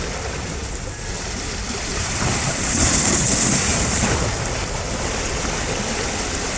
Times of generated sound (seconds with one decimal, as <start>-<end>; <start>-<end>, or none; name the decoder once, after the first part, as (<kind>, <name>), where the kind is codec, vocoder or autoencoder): 1.9-2.8 (vocoder, BigVGAN v2); 3.7-5.4